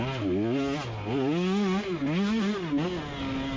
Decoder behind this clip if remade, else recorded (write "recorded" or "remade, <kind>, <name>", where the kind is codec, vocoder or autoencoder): recorded